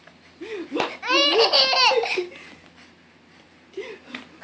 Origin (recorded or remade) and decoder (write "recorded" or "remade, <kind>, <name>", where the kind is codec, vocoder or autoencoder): recorded